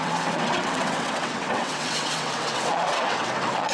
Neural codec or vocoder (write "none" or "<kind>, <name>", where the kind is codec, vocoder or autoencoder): vocoder, WaveNeXt